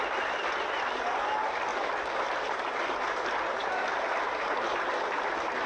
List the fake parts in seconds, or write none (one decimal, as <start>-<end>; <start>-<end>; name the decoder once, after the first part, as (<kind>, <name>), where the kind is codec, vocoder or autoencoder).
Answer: 1.7-2.2 (vocoder, BigVGAN v2)

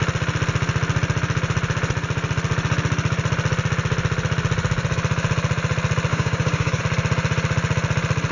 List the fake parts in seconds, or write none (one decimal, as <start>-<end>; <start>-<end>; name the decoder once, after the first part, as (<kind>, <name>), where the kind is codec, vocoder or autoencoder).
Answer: 6.1-6.8 (codec, DAC)

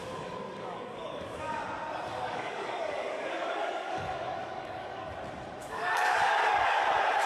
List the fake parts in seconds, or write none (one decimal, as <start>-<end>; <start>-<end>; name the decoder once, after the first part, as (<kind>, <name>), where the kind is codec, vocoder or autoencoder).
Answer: 0.0-1.6 (codec, DAC); 2.1-5.1; 5.6-6.8

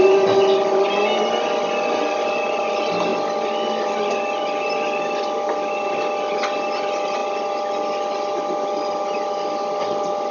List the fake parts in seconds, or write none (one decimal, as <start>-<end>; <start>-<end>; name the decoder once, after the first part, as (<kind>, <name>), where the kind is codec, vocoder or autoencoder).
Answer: none

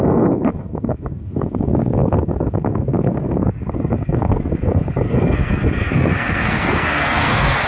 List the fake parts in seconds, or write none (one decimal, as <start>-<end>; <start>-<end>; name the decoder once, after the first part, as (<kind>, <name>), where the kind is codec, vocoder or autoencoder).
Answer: 0.0-7.7 (codec, SNAC)

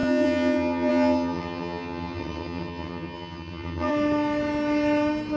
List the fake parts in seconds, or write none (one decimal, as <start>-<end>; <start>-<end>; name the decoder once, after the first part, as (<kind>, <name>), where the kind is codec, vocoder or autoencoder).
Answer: 0.0-3.9 (vocoder, HiFi-GAN)

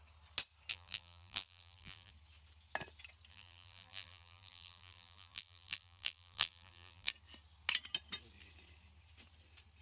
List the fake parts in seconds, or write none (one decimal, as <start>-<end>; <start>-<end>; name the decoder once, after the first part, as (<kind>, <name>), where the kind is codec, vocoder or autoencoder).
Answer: 0.7-2.1 (vocoder, BigVGAN v2); 3.3-7.1

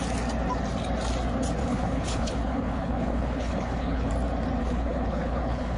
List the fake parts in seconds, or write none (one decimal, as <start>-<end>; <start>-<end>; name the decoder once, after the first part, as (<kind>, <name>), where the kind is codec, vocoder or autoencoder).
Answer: 1.6-4.1 (codec, HILCodec); 4.6-5.8